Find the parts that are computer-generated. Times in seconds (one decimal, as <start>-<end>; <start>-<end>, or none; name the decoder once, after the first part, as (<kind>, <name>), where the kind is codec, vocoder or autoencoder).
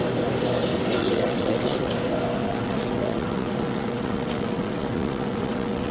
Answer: 1.0-1.9 (vocoder, WaveNeXt); 2.4-5.9